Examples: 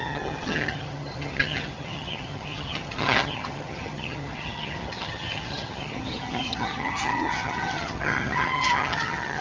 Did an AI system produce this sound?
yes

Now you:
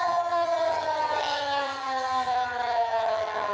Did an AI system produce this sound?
yes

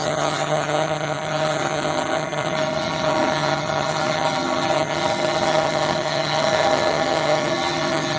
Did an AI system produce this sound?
yes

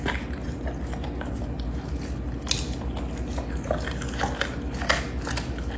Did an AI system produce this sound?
no